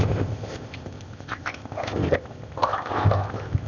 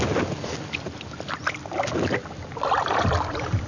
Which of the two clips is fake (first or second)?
first